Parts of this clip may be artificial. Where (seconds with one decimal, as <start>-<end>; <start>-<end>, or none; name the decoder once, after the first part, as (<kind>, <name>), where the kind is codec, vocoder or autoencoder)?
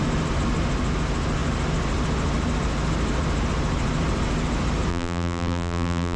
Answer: 4.9-6.2 (vocoder, BigVGAN v2)